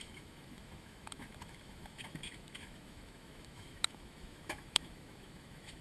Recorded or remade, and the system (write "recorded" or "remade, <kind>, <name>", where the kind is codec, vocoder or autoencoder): remade, autoencoder, DAC-VAE